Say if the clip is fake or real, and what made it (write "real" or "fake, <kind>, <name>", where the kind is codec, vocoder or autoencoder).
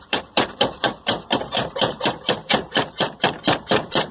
fake, vocoder, BigVGAN v2